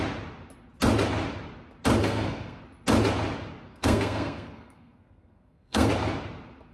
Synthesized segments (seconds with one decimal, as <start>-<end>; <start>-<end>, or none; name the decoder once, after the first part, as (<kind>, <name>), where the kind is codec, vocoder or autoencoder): 2.0-2.6 (codec, SNAC); 3.7-5.9